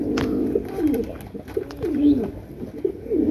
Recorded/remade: recorded